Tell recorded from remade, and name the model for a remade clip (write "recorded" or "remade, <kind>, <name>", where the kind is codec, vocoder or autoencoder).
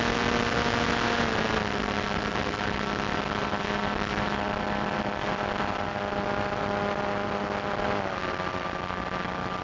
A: recorded